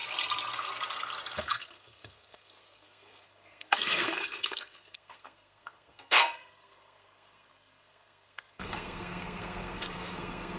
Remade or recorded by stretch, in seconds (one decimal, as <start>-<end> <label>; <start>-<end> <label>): 0.0-1.4 recorded; 1.4-10.6 remade